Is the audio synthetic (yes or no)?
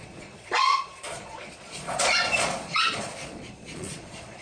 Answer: yes